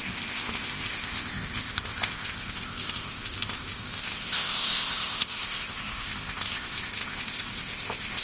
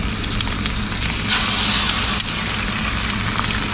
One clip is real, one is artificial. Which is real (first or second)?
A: second